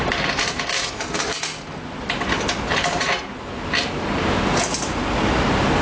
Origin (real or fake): real